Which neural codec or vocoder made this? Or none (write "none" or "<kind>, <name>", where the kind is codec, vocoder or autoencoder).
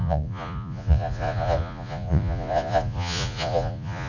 vocoder, Vocos